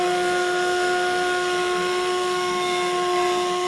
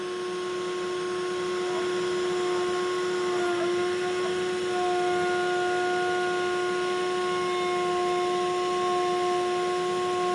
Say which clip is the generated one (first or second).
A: first